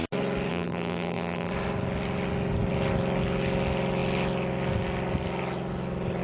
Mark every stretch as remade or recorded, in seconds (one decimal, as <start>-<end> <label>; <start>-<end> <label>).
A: 0.0-0.5 recorded; 0.5-1.5 remade; 1.5-6.2 recorded